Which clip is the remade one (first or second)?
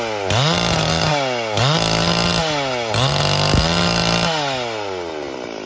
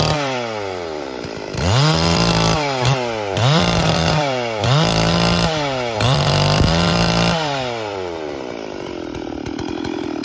second